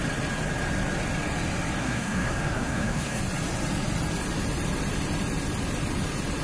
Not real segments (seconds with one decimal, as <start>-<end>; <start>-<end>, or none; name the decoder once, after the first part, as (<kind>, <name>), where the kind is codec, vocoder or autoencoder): 1.8-3.2 (codec, SNAC)